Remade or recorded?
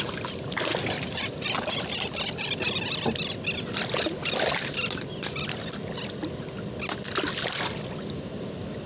recorded